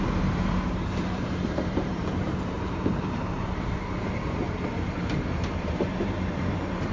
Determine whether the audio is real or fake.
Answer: fake